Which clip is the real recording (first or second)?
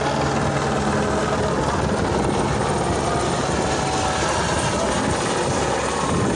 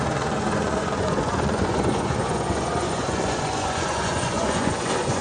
first